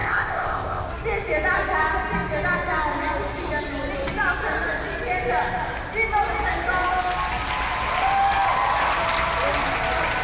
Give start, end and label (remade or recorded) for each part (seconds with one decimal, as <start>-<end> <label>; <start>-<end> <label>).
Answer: 0.0-0.9 remade; 0.9-10.2 recorded